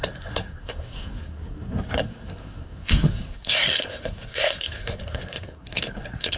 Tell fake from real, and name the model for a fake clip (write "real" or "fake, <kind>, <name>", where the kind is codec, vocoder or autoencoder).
fake, codec, SNAC